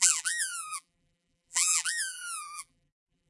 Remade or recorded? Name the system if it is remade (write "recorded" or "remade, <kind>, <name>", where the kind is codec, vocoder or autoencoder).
remade, vocoder, BigVGAN v2